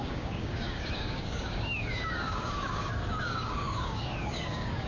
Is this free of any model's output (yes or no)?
no